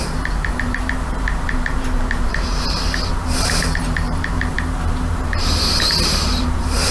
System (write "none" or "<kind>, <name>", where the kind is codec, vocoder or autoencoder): vocoder, BigVGAN v2